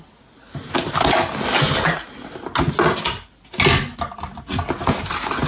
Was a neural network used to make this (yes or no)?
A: no